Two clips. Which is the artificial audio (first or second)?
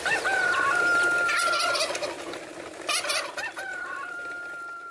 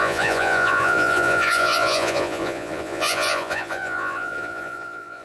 second